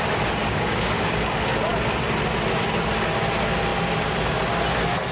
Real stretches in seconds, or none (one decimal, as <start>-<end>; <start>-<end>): 0.0-0.4; 1.1-5.1